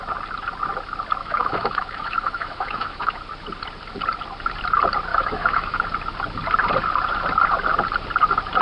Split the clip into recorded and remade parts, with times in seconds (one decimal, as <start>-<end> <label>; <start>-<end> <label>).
0.0-1.2 recorded; 1.2-3.2 remade; 3.2-5.1 recorded; 5.1-5.8 remade; 5.8-8.6 recorded